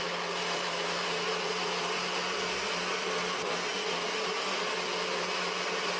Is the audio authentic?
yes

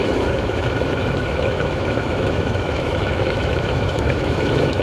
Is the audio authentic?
no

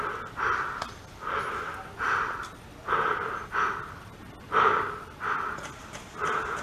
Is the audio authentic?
yes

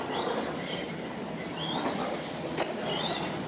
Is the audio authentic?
yes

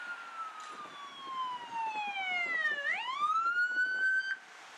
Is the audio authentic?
yes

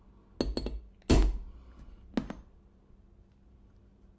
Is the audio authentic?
yes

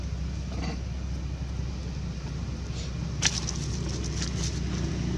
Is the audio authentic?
yes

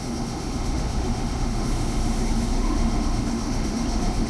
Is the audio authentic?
no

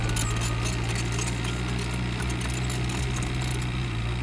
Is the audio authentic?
yes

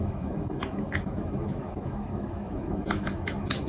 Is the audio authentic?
no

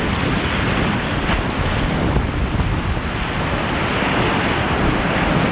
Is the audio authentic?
yes